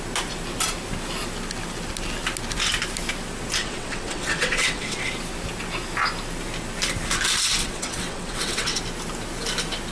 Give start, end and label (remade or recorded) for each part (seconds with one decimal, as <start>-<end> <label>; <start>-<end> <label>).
0.0-3.6 recorded; 3.6-5.1 remade; 5.1-7.6 recorded; 7.6-8.8 remade; 8.8-9.9 recorded